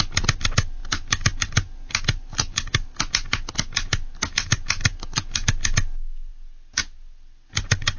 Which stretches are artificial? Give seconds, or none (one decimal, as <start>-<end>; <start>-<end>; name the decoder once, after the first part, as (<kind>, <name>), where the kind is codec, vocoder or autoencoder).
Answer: none